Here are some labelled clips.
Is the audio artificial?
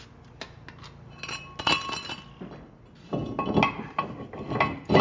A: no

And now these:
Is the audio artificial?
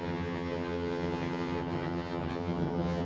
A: yes